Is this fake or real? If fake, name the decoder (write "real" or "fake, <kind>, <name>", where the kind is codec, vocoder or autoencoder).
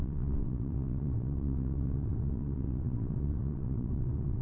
fake, vocoder, WaveNeXt